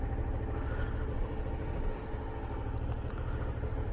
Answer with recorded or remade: recorded